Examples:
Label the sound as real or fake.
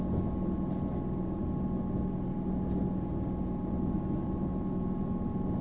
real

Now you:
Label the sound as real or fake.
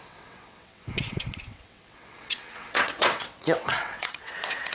fake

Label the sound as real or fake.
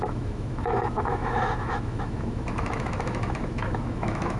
fake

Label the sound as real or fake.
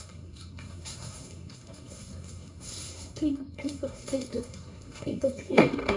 fake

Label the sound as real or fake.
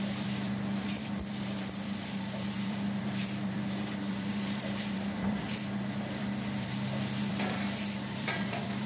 fake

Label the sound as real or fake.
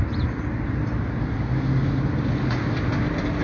real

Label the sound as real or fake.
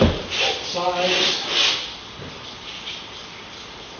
fake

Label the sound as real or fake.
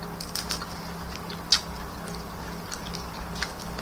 real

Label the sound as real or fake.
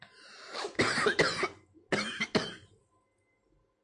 real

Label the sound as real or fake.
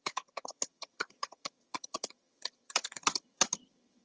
fake